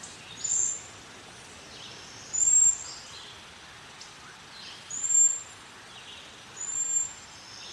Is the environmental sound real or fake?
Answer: real